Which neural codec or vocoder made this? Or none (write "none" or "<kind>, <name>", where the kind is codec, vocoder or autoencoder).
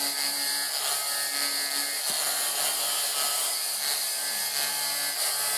none